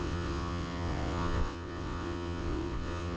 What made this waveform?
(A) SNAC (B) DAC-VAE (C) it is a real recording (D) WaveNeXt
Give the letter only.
D